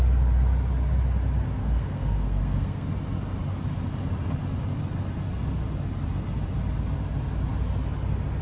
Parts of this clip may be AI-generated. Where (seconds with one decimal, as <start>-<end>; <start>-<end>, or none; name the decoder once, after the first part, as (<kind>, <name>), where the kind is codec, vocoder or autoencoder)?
1.6-2.9 (codec, SNAC)